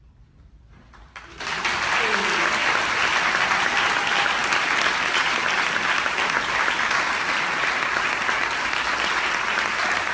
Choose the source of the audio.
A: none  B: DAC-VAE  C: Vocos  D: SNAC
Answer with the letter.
A